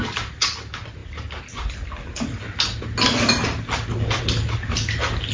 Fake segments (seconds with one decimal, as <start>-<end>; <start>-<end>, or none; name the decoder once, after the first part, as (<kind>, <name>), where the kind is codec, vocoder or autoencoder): none

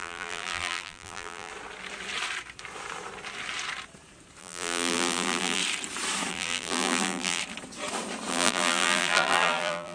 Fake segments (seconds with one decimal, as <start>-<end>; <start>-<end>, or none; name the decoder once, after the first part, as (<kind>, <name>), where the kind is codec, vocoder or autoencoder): 0.0-1.5 (vocoder, BigVGAN v2); 4.4-5.6; 6.3-7.4; 8.3-9.9

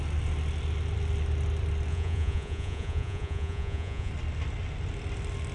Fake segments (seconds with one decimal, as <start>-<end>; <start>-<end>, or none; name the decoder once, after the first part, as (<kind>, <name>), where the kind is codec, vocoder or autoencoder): 1.9-4.1 (vocoder, Vocos)

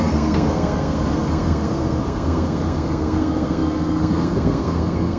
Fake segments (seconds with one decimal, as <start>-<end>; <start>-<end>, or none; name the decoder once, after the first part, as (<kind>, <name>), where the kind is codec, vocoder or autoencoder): 0.0-5.2 (codec, SNAC)

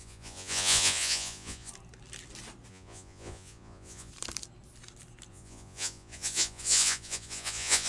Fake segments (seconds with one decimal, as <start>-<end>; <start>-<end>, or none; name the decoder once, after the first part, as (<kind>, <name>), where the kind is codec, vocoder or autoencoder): 0.0-1.7 (vocoder, Vocos); 2.7-4.1; 5.3-7.9

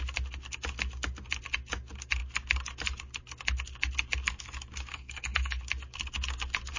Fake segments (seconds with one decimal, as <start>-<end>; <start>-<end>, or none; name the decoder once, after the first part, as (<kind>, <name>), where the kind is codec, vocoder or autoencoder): 4.9-5.6 (codec, SNAC)

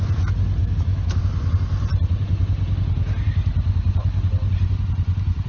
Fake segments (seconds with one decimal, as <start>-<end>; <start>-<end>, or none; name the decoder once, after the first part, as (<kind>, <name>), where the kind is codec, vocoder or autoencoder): 0.6-1.2 (autoencoder, DAC-VAE)

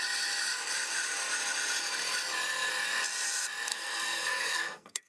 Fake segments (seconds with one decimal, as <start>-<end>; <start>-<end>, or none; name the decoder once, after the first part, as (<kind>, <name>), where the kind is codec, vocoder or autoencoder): 3.7-5.1 (codec, SNAC)